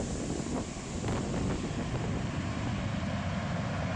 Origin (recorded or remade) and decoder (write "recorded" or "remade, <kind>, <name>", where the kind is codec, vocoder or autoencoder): recorded